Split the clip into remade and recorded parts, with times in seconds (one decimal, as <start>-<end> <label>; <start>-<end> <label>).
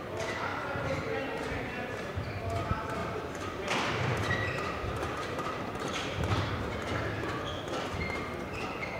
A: 0.0-3.0 recorded; 3.0-6.6 remade; 6.6-9.0 recorded